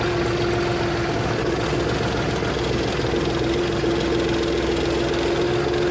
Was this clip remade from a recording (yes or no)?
no